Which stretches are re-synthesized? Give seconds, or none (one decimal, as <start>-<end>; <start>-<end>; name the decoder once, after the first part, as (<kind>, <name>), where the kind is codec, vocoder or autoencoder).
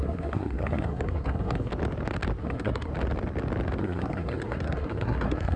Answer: 0.0-1.7 (codec, SNAC); 2.4-2.9; 3.8-5.6